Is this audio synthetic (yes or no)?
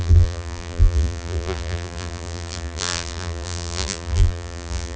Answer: yes